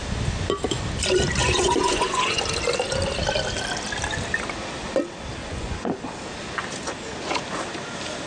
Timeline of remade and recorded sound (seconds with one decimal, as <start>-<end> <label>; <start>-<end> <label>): 0.0-1.4 recorded; 1.4-2.4 remade; 2.4-5.4 recorded; 5.4-6.1 remade; 6.1-8.3 recorded